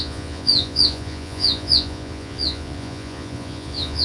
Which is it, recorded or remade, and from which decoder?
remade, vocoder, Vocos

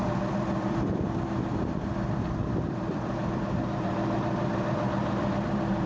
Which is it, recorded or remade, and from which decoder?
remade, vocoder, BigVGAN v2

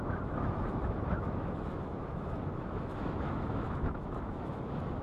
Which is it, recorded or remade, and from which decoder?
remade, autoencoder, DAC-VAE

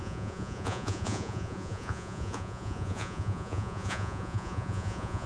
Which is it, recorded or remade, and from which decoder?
remade, vocoder, Vocos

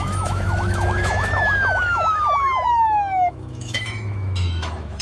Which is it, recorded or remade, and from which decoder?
remade, autoencoder, DAC-VAE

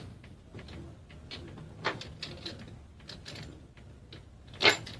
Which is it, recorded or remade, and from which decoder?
recorded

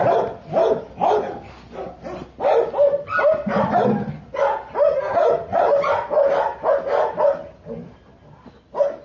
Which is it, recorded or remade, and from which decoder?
recorded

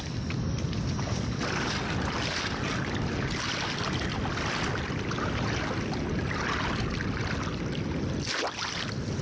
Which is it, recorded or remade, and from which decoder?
recorded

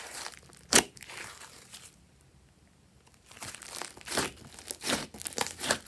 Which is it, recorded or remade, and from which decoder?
recorded